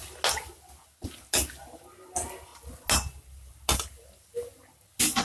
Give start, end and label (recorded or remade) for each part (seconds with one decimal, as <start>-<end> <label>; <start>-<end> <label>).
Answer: 0.0-5.2 recorded